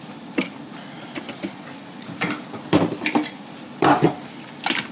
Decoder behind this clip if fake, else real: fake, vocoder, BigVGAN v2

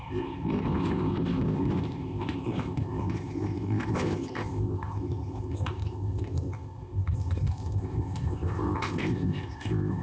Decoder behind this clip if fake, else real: fake, codec, ZipCodec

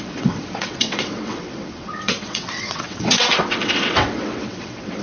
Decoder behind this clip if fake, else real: fake, vocoder, WaveNeXt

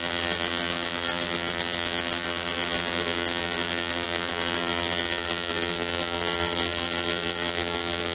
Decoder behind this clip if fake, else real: fake, vocoder, BigVGAN v2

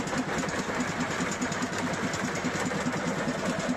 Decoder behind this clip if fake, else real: real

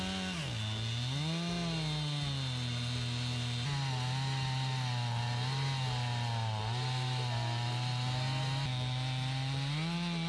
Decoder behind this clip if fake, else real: real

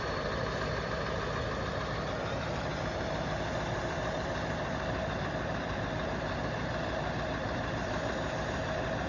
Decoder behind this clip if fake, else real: fake, vocoder, BigVGAN v2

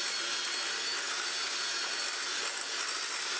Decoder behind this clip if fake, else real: real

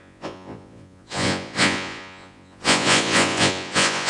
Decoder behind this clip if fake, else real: fake, vocoder, Vocos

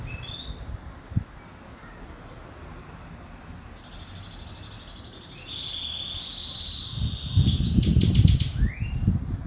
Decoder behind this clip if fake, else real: real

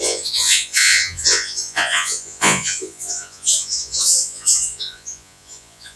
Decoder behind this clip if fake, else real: fake, vocoder, Vocos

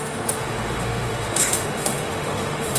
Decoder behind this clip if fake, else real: fake, autoencoder, DAC-VAE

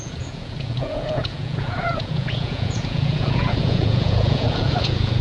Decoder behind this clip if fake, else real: fake, vocoder, Vocos